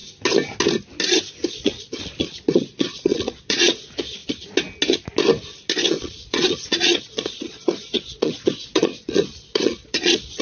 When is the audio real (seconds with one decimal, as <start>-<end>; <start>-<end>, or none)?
0.0-1.5; 4.2-5.9